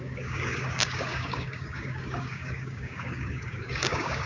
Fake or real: fake